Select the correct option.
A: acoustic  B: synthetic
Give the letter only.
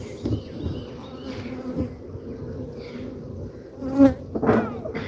A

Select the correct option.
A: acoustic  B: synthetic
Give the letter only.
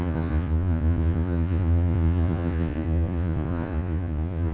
B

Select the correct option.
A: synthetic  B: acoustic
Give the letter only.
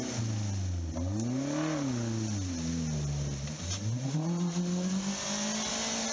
B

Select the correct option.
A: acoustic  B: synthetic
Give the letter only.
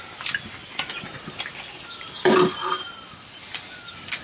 A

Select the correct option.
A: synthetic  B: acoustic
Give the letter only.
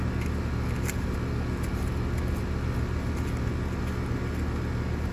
B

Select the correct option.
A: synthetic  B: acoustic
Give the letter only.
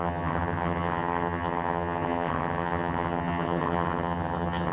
A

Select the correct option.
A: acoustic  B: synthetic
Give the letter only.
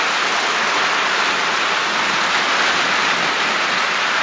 A